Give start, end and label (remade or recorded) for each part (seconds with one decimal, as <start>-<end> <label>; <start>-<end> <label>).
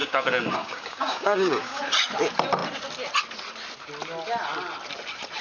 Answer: 0.0-1.8 remade; 1.8-5.4 recorded